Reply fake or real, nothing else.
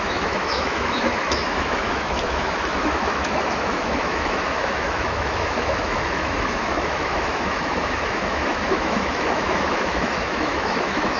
fake